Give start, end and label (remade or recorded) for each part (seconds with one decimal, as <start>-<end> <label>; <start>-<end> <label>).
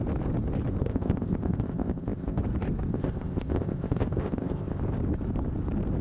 0.0-0.8 recorded; 0.8-2.4 remade; 2.4-2.9 recorded; 2.9-4.8 remade; 4.8-6.0 recorded